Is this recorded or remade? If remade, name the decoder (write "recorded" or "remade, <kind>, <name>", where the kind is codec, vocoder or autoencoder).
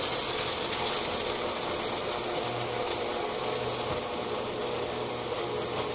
recorded